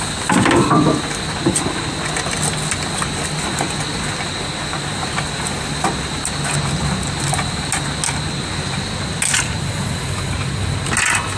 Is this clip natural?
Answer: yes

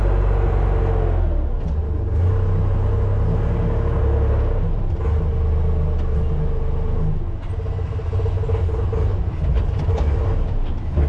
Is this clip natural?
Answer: yes